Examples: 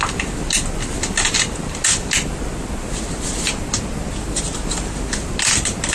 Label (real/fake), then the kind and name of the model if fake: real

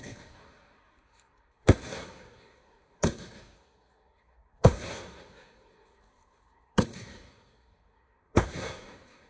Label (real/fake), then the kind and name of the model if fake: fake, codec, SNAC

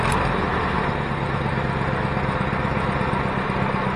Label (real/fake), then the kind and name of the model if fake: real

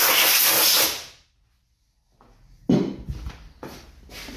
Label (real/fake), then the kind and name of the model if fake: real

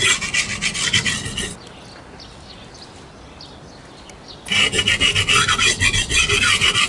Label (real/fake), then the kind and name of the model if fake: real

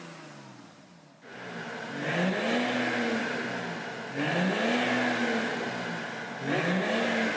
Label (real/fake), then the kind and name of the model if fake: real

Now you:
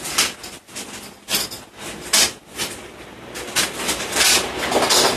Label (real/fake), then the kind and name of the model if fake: real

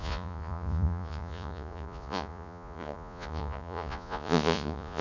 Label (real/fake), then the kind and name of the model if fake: fake, vocoder, Vocos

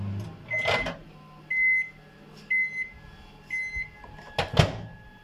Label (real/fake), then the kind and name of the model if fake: real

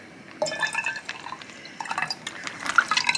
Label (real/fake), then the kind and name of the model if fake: real